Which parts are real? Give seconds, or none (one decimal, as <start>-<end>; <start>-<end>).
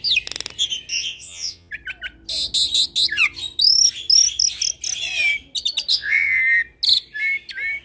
0.0-0.9; 1.7-5.9; 6.4-7.8